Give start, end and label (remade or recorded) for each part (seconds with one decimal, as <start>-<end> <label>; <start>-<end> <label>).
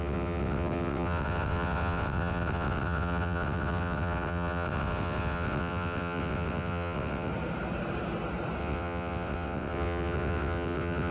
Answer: 0.0-7.3 remade; 7.3-8.6 recorded; 8.6-11.1 remade